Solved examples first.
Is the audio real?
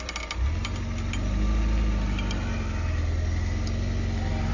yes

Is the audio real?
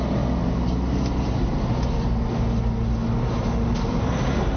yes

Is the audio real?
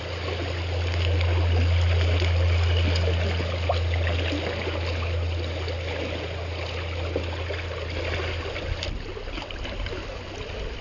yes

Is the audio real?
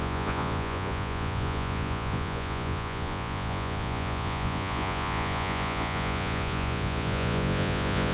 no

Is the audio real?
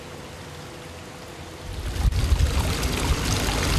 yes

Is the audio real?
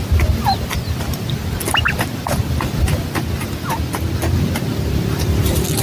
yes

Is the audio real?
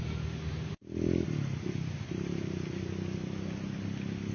yes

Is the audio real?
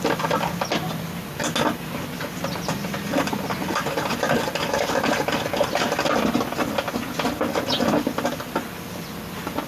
yes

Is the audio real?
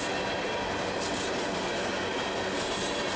yes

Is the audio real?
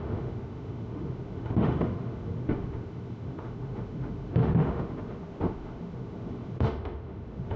no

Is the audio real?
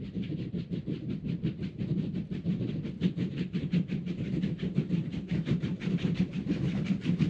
no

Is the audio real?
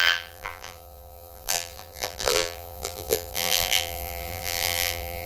no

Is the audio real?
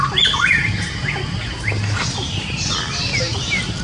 yes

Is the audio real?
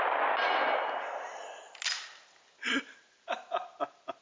yes